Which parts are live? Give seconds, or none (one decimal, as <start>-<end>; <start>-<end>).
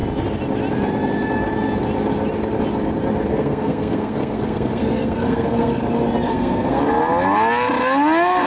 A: 0.0-3.3; 5.8-6.3; 6.8-8.5